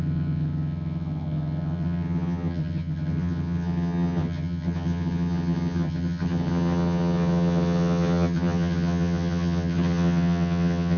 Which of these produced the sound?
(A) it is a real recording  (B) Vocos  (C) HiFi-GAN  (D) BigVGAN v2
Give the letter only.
C